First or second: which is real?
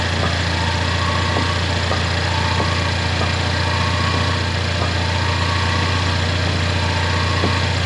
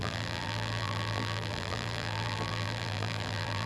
first